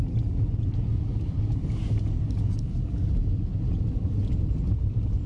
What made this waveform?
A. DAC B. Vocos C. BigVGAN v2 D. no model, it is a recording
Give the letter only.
D